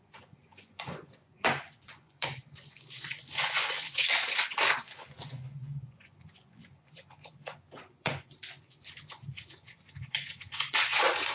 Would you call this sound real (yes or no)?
no